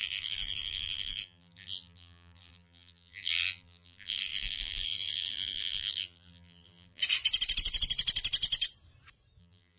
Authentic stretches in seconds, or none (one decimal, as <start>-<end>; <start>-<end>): 7.0-9.4